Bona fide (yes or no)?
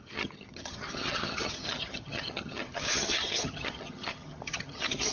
no